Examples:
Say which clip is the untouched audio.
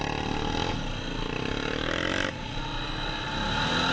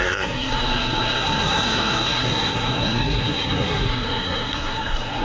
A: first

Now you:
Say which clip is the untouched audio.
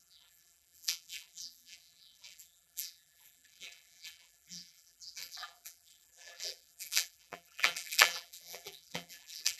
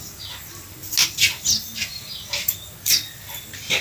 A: second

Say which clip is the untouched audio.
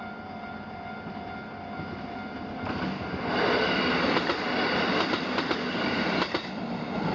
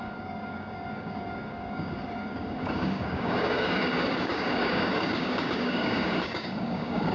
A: first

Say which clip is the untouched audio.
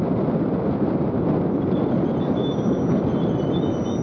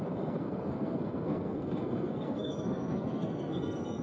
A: first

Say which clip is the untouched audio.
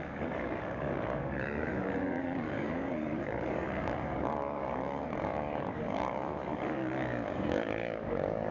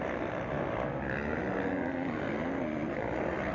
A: second